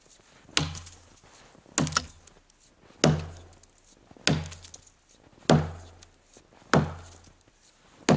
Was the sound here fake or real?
real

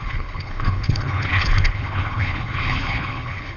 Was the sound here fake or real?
fake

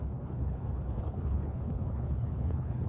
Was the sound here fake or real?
fake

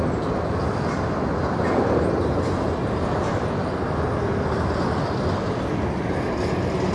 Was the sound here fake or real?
real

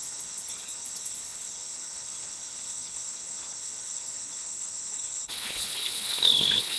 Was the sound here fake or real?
fake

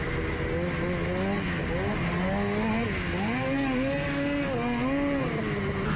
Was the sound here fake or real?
real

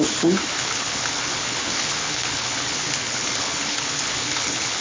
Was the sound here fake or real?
fake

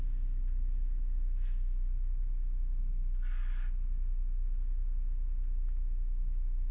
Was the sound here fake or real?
real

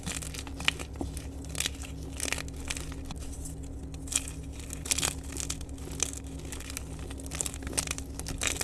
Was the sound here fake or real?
real